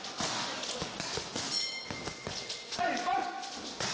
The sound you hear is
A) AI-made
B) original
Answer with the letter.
A